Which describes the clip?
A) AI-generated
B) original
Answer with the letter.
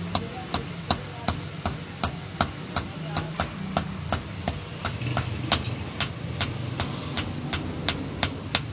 B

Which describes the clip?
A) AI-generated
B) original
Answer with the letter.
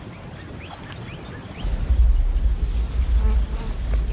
B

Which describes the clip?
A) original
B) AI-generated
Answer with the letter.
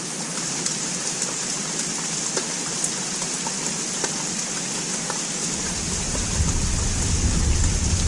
A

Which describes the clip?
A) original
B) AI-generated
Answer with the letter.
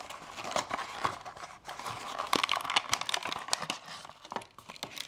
A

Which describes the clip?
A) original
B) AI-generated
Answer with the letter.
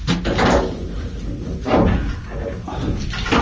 A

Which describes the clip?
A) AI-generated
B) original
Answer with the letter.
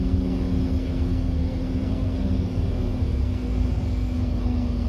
A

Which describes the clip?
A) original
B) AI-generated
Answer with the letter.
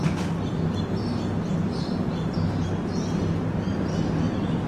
A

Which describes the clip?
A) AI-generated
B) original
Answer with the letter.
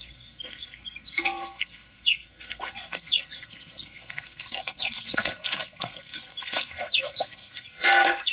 A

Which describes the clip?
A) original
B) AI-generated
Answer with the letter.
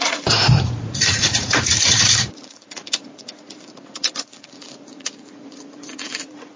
B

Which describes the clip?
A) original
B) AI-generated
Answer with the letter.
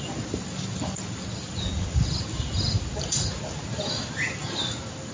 A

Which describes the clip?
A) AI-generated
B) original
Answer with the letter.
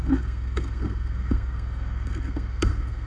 A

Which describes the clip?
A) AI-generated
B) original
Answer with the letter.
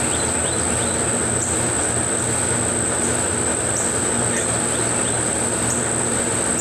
B